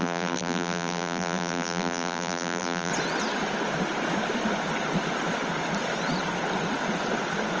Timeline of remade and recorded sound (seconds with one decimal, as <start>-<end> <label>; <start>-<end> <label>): 0.0-2.9 remade; 2.9-7.6 recorded